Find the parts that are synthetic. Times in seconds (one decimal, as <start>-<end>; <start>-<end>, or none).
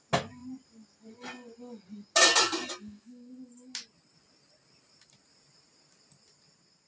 none